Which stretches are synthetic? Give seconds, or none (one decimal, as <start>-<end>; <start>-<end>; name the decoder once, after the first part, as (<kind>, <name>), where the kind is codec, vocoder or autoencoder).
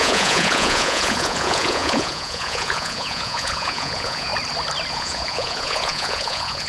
0.0-4.3 (vocoder, Vocos); 4.9-6.7